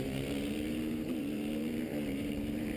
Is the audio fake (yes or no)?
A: yes